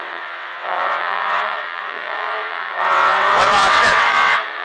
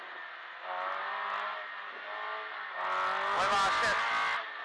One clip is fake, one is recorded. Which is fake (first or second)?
first